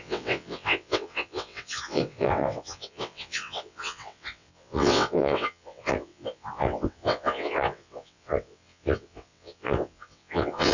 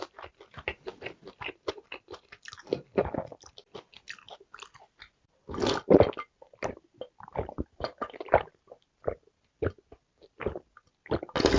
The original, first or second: second